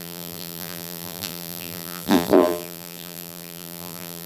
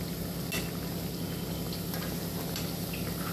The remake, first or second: first